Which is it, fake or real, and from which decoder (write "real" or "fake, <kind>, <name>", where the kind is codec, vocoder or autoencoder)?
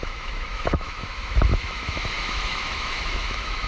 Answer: fake, autoencoder, DAC-VAE